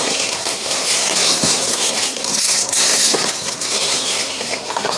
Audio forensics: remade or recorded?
remade